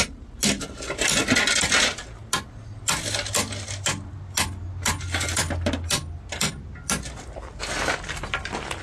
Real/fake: real